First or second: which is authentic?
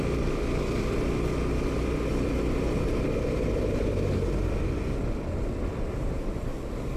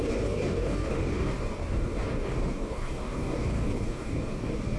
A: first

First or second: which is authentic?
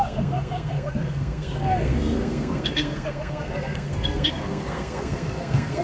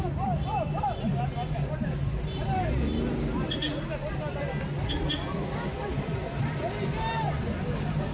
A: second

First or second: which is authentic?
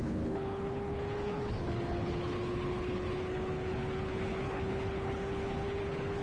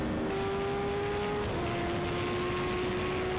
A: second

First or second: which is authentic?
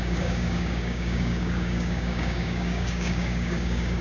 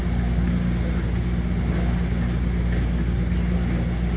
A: second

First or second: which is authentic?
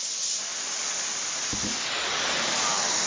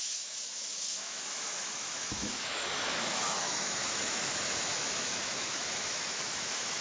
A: first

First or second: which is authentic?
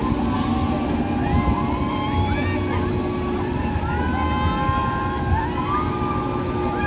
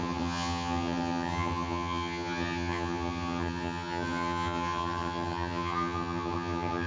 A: first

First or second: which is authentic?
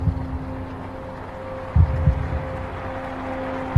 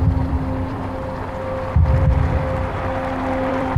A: first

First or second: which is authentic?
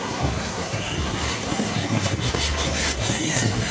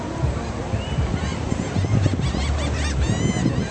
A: second